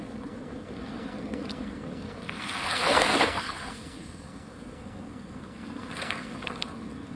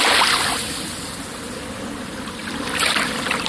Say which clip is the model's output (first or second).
first